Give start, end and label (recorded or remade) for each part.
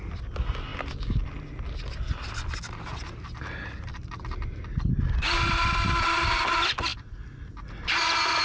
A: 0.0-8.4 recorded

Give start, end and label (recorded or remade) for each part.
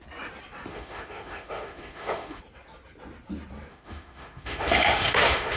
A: 0.0-0.7 recorded; 0.7-2.4 remade; 2.4-3.7 recorded; 3.7-5.6 remade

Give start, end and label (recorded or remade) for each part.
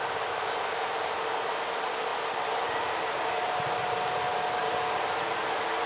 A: 0.0-5.9 recorded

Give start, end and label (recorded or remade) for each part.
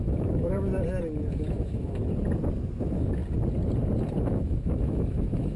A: 0.0-0.7 remade; 0.7-1.3 recorded; 1.3-2.0 remade; 2.0-2.8 recorded; 2.8-3.2 remade; 3.2-4.2 recorded; 4.2-5.6 remade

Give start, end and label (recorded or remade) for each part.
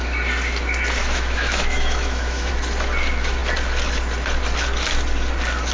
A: 0.0-1.0 recorded; 1.0-2.5 remade; 2.5-5.7 recorded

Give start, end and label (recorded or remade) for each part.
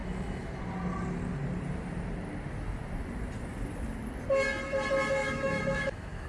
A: 0.0-0.6 remade; 0.6-5.2 recorded; 5.2-6.3 remade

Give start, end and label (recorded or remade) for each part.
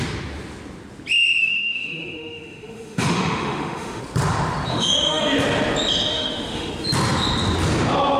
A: 0.0-1.4 recorded; 1.4-4.0 remade; 4.0-4.7 recorded; 4.7-5.2 remade; 5.2-6.1 recorded; 6.1-6.7 remade; 6.7-8.2 recorded